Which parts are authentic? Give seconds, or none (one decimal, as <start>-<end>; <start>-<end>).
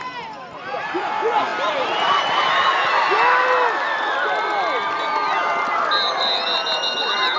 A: 0.0-7.4